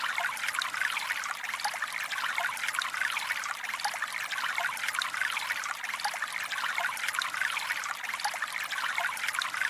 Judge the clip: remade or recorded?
remade